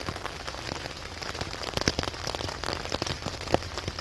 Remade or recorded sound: recorded